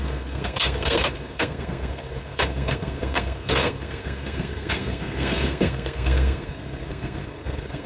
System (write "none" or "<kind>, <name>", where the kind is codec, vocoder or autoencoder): codec, SNAC